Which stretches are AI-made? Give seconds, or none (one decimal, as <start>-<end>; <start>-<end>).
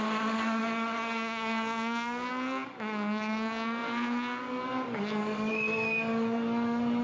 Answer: 0.0-7.0